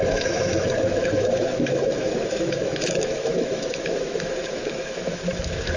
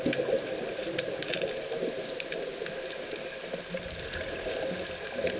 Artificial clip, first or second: first